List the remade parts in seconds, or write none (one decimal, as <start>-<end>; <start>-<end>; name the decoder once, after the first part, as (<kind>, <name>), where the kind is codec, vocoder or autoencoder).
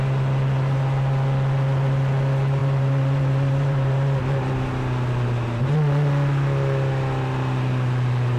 2.6-4.2 (vocoder, BigVGAN v2)